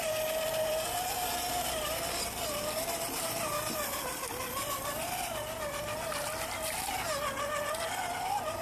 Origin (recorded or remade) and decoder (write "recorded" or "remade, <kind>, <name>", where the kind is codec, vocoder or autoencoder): recorded